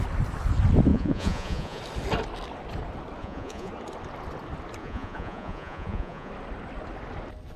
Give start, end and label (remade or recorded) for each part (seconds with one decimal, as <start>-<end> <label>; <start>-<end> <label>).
0.0-0.9 recorded; 0.9-1.8 remade; 1.8-3.2 recorded; 3.2-3.7 remade; 3.7-4.8 recorded; 4.8-6.3 remade; 6.3-7.6 recorded